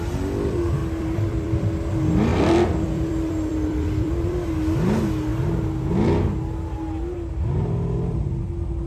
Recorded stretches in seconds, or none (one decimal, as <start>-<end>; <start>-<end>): 0.0-0.8; 1.9-2.3; 4.5-8.9